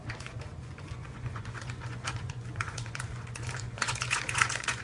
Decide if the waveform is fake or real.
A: fake